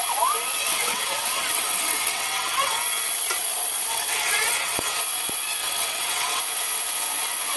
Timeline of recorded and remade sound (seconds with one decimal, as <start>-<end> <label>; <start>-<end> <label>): 0.0-0.6 recorded; 0.6-2.8 remade; 2.8-3.9 recorded; 3.9-5.0 remade; 5.0-5.6 recorded; 5.6-6.4 remade; 6.4-7.6 recorded